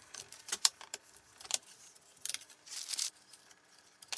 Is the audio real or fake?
fake